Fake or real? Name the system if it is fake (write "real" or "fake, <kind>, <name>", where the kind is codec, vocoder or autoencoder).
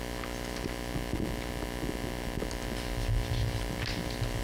real